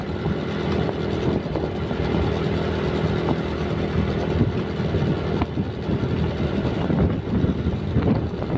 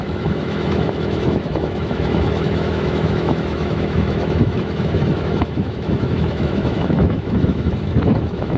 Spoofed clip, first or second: second